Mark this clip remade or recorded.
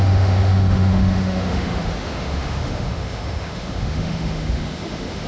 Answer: remade